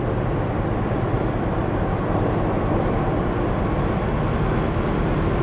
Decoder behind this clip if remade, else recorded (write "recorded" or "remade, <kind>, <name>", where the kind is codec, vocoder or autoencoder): recorded